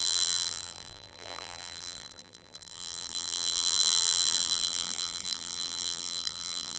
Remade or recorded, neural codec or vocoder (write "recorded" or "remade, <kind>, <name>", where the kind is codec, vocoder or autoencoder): remade, vocoder, BigVGAN v2